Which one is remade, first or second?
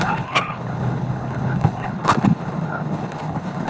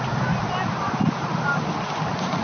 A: first